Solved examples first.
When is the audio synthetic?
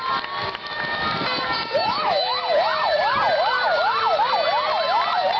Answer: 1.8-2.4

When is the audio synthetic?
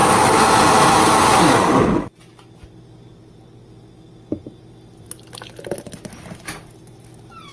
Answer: none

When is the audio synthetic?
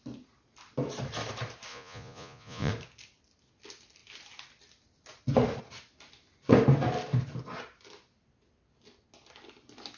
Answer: 1.7-2.7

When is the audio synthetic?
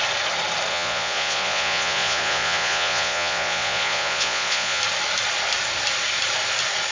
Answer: 0.7-4.8